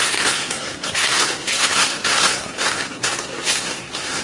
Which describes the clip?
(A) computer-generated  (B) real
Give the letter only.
A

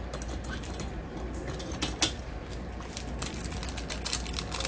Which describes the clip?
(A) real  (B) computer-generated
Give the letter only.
A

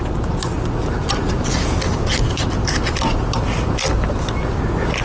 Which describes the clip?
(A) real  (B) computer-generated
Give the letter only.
A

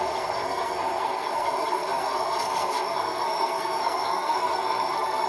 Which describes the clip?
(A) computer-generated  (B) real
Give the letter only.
A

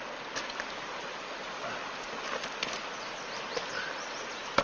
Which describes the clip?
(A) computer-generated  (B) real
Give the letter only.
B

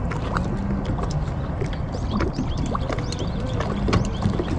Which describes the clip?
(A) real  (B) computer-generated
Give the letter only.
A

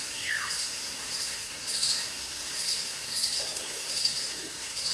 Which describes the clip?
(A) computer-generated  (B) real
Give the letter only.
A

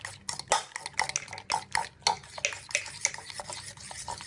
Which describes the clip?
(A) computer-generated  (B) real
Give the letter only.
B